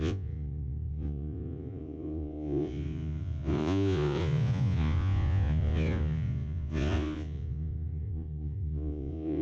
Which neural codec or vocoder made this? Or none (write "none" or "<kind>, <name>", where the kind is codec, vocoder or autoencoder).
vocoder, Vocos